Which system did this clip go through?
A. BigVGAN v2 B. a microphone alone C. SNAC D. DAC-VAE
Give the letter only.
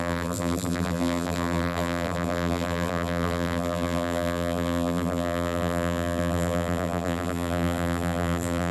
A